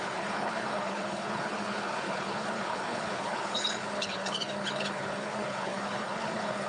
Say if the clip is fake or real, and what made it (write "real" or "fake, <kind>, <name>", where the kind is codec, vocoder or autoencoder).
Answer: fake, codec, HILCodec